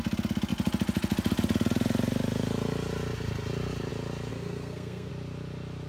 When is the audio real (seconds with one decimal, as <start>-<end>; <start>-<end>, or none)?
0.0-4.3; 5.1-5.9